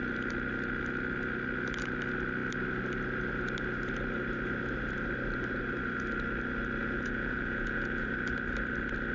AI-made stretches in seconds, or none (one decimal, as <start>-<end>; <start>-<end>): 6.8-8.1